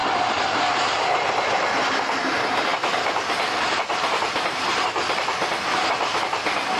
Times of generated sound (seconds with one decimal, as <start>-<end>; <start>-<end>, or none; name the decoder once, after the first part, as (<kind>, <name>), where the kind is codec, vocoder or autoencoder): 0.0-6.8 (vocoder, BigVGAN v2)